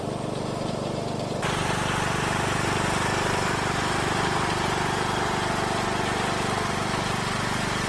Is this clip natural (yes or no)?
no